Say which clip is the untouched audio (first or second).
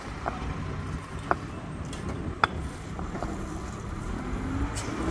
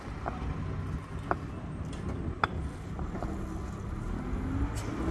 second